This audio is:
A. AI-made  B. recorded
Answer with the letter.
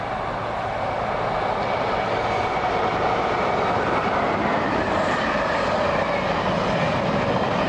B